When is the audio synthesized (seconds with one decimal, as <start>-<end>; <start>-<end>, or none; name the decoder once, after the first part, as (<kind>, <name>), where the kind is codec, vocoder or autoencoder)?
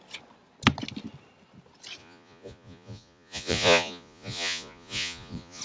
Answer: 2.0-5.6 (vocoder, Vocos)